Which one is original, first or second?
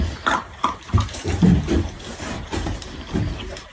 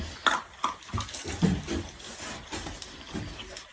second